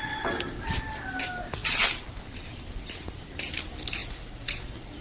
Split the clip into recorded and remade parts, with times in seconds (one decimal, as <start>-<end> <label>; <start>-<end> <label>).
0.0-5.0 recorded